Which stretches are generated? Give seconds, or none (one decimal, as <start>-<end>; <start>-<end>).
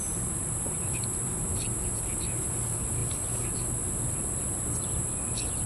0.0-3.0; 4.4-5.7